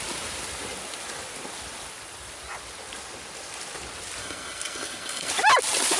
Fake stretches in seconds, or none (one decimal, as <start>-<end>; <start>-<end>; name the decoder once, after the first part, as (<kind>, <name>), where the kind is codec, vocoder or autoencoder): 4.2-5.3 (codec, SNAC)